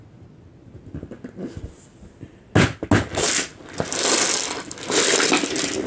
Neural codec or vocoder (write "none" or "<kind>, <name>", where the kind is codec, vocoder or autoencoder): none